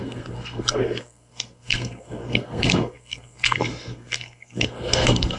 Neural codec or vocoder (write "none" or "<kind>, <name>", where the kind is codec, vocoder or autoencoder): codec, SNAC